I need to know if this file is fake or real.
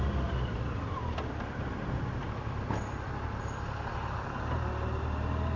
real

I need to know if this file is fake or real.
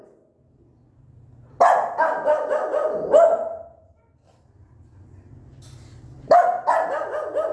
real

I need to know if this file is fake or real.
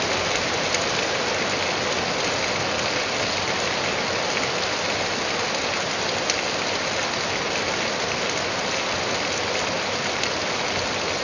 real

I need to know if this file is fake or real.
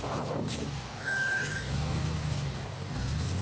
fake